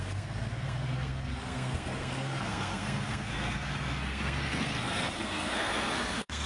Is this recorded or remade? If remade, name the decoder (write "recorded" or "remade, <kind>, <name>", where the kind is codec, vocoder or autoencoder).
remade, codec, SNAC